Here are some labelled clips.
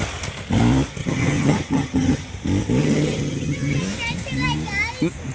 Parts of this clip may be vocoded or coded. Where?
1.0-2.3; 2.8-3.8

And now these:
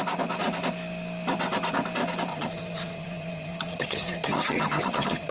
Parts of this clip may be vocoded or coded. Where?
2.3-5.3

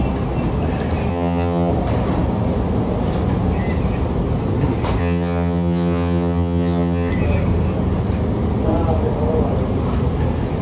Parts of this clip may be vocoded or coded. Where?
1.1-1.7; 5.0-7.1

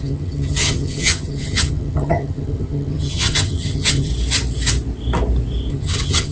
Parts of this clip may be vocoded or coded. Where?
0.0-4.1; 5.7-6.3